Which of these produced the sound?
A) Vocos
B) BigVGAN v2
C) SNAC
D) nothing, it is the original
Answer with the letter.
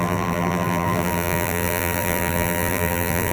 B